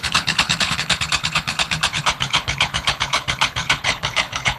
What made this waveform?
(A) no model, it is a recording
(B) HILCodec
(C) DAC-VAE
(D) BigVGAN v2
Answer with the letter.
B